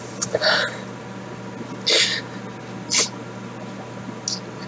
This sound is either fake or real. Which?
real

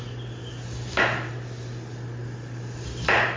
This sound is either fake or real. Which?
real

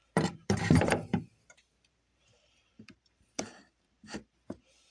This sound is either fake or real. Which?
fake